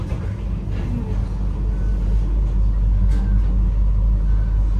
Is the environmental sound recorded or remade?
recorded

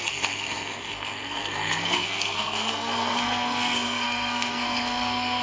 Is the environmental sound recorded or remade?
remade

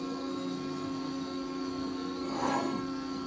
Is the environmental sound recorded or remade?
remade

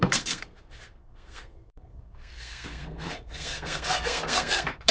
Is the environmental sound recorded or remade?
remade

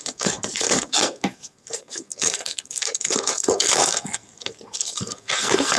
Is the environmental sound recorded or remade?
remade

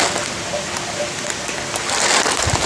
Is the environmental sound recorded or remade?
recorded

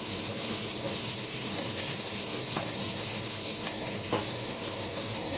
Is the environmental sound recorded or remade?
remade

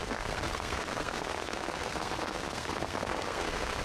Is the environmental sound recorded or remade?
remade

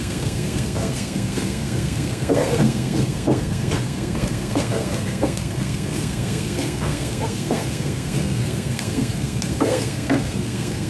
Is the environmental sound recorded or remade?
remade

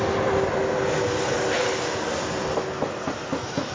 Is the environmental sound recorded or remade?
recorded